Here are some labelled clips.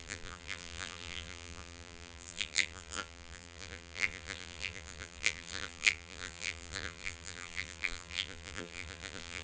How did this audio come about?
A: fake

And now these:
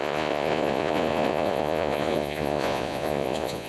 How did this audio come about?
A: fake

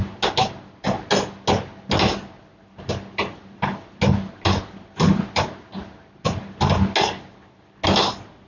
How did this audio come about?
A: real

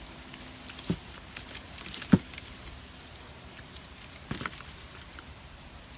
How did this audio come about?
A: real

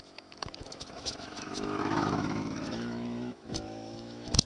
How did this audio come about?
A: fake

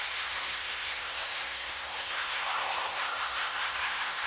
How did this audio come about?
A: fake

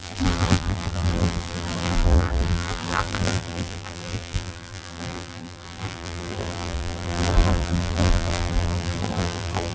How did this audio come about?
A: fake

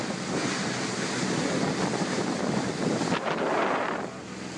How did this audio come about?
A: real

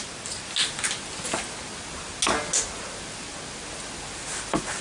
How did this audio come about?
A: real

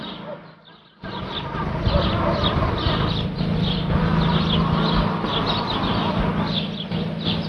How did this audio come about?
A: real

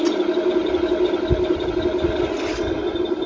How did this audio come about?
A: real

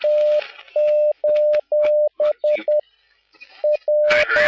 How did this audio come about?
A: real